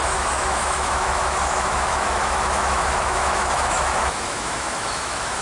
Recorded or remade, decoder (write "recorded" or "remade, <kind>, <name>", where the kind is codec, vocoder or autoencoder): remade, autoencoder, DAC-VAE